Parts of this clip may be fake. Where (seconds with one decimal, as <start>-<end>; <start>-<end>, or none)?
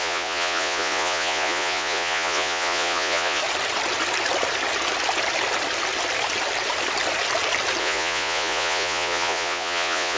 0.0-3.4; 7.8-10.2